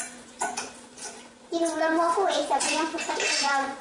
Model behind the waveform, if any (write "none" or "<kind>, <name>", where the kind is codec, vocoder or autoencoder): vocoder, Vocos